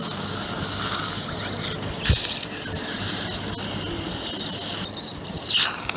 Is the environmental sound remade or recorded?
recorded